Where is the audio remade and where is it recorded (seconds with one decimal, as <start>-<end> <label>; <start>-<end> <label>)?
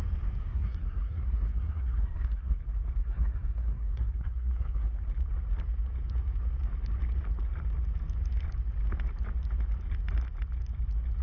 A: 0.0-0.4 recorded; 0.4-2.6 remade; 2.6-3.0 recorded; 3.0-4.9 remade; 4.9-11.2 recorded